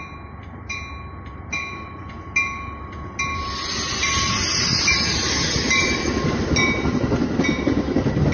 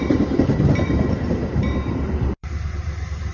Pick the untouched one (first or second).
first